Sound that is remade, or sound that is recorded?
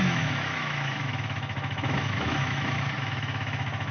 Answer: remade